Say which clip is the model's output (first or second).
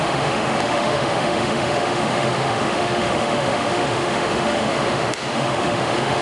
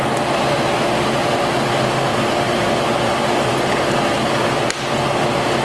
first